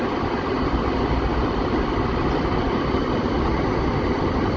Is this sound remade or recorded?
recorded